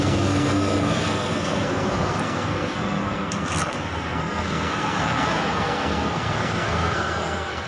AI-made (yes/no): yes